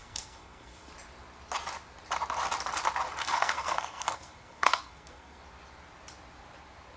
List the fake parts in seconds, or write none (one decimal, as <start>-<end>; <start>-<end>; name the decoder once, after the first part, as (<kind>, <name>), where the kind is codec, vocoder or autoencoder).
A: 0.0-0.9 (codec, SNAC); 3.2-5.4